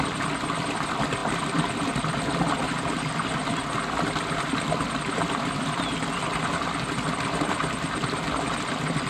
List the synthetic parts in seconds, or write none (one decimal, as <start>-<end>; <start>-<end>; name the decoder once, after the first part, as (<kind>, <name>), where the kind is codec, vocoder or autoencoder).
none